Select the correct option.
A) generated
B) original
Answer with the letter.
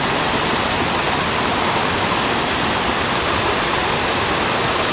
B